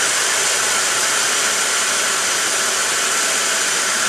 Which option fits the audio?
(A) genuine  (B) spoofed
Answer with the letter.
A